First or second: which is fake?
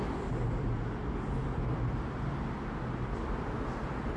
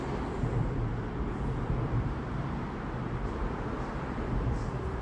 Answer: second